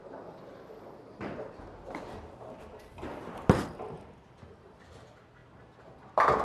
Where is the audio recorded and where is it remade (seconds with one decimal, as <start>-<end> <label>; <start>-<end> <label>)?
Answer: 0.0-6.4 recorded